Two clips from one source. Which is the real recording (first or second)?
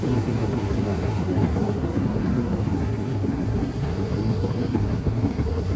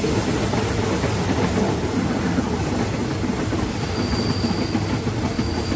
second